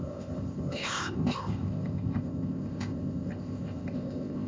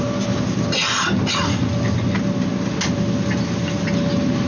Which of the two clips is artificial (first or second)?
first